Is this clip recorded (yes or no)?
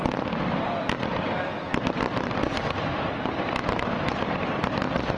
no